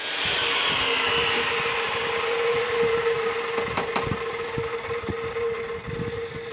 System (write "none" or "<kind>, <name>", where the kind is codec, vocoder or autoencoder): none